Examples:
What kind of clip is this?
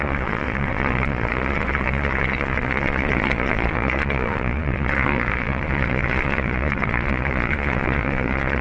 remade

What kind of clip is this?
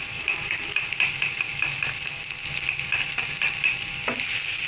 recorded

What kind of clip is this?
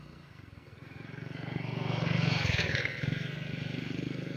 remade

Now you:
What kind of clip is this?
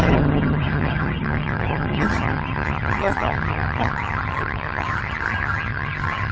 remade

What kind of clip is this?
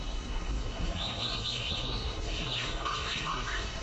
remade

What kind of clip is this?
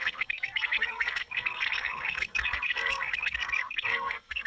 remade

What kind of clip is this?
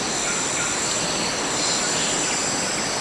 recorded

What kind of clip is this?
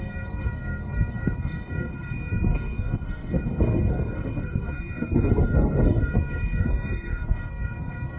remade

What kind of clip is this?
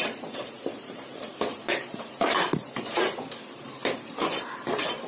remade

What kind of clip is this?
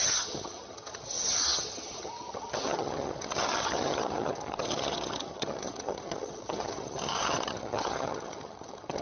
remade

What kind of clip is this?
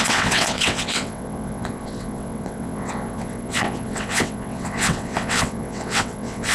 remade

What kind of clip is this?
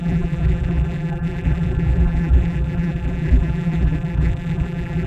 remade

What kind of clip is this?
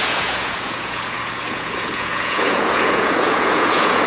remade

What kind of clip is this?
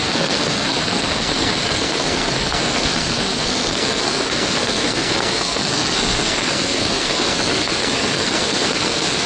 remade